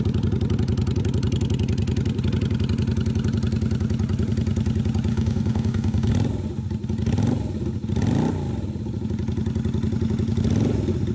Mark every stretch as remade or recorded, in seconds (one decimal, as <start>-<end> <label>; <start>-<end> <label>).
0.0-5.1 recorded; 5.1-6.1 remade; 6.1-11.1 recorded